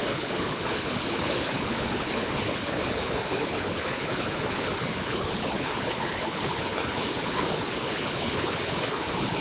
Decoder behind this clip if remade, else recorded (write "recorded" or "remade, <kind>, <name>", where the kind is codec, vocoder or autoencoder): remade, codec, HILCodec